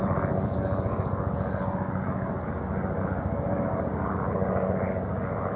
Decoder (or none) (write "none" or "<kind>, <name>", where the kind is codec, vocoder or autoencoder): none